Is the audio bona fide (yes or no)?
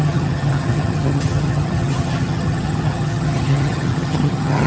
no